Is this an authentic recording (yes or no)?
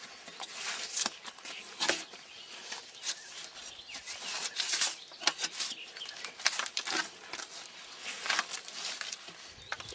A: yes